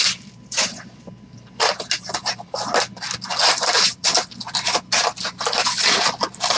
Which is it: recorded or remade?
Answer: recorded